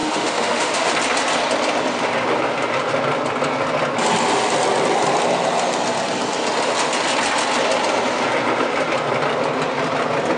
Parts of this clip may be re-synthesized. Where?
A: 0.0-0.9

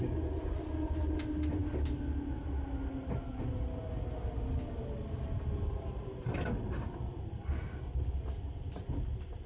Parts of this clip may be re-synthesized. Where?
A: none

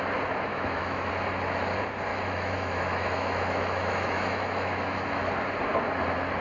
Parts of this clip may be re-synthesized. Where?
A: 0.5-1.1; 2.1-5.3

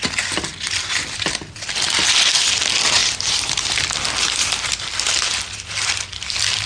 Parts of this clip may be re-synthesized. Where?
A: none